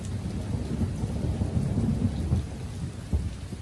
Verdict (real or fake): real